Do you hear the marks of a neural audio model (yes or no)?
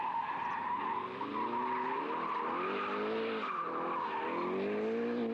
no